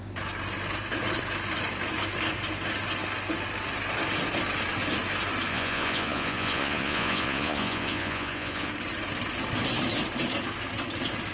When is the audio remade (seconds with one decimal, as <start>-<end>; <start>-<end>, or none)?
5.5-8.7

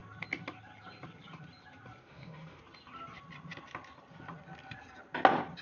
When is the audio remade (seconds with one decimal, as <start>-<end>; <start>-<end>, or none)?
2.0-2.6

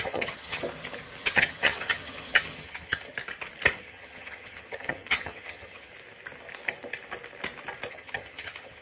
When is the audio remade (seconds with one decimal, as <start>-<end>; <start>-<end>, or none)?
0.0-0.6; 1.2-3.1; 3.7-5.9; 7.9-8.8

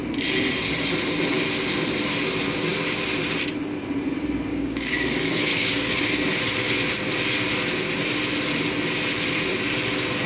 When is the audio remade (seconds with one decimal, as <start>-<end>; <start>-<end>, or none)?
4.5-6.1